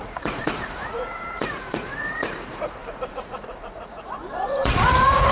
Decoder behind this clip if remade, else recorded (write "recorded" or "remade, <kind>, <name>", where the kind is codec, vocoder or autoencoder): remade, vocoder, Vocos